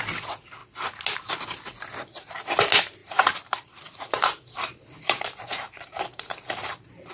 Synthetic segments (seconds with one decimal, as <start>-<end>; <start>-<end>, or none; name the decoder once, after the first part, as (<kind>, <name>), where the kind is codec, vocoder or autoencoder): 3.0-7.1 (vocoder, BigVGAN v2)

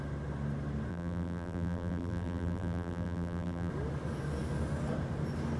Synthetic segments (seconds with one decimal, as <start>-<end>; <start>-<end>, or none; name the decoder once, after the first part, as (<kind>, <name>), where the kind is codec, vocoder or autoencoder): 0.9-3.7 (vocoder, BigVGAN v2)

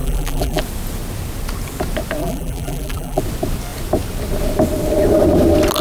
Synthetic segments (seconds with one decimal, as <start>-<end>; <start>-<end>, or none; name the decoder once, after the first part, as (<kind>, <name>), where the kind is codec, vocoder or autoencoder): 0.0-0.6 (vocoder, BigVGAN v2); 2.2-3.2

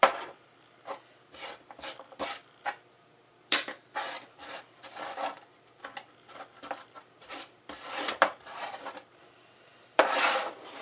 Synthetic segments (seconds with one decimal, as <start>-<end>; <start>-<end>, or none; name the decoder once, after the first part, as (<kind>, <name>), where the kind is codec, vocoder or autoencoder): 0.0-10.8 (vocoder, BigVGAN v2)